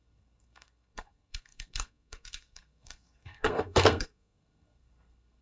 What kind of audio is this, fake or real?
fake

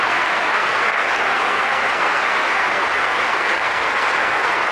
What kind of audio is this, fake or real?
fake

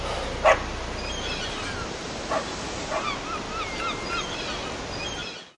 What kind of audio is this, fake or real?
real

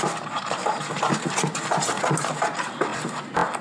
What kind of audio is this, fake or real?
real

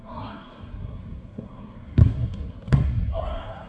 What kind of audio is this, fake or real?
fake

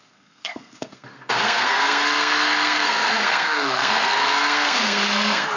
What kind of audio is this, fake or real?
fake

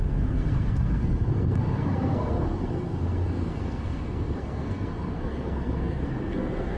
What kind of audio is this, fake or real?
fake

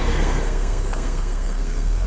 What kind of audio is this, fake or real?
fake